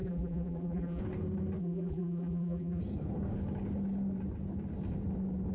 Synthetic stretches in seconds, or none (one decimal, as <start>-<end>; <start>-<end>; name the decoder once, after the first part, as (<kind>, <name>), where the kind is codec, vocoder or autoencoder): 0.0-1.0 (vocoder, BigVGAN v2); 1.6-2.8